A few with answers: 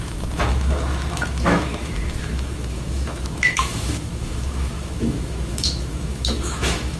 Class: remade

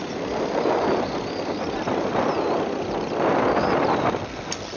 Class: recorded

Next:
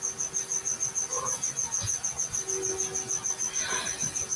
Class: recorded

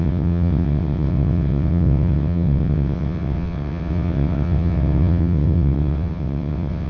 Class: remade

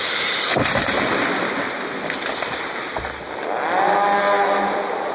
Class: recorded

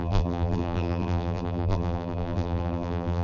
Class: remade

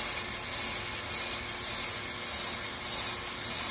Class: recorded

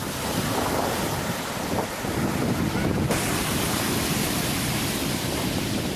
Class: recorded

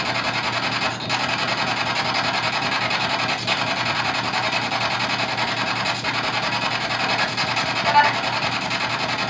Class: recorded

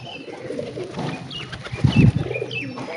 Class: recorded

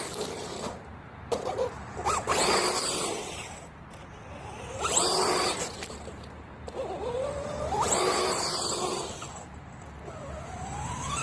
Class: recorded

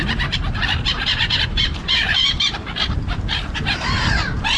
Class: remade